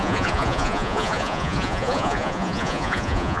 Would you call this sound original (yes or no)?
no